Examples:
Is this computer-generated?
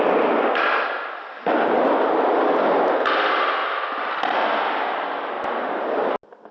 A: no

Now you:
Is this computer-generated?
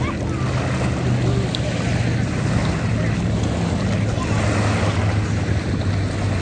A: no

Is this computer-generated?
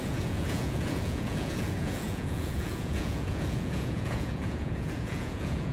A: yes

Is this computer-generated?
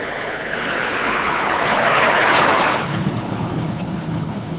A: yes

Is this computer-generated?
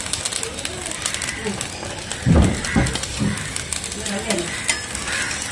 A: no